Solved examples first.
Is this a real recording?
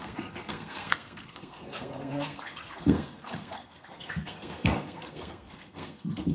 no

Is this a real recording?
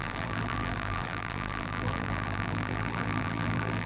no